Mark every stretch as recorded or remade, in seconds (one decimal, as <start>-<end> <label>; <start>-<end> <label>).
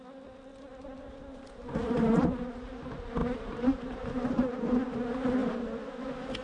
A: 0.0-0.7 recorded; 0.7-2.5 remade; 2.5-3.2 recorded; 3.2-4.8 remade; 4.8-6.4 recorded